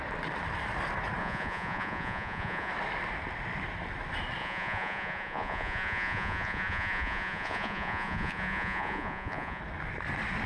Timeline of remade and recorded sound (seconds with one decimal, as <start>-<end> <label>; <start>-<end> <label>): 0.0-1.2 recorded; 1.2-2.7 remade; 2.7-4.4 recorded; 4.4-9.6 remade; 9.6-10.5 recorded